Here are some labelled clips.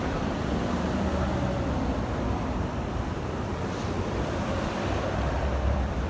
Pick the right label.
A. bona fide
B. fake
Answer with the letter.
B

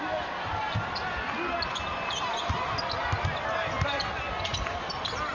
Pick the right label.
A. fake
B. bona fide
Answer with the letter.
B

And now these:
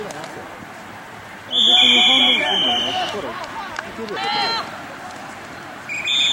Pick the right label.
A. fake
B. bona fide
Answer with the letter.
B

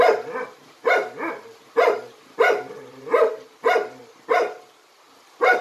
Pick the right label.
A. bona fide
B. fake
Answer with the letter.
A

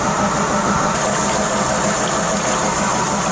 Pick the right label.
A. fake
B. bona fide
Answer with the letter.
B